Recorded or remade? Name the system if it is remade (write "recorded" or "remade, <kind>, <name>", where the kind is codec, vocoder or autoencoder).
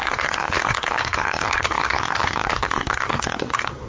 remade, codec, SNAC